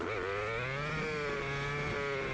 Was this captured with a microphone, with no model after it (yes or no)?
yes